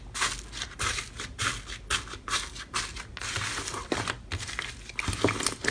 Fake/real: real